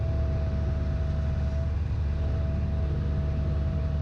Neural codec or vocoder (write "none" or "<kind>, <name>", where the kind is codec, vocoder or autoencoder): none